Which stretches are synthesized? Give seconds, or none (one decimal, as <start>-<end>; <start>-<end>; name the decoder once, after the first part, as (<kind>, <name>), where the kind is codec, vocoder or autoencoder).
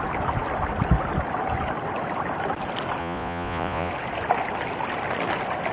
3.0-3.9 (vocoder, Vocos)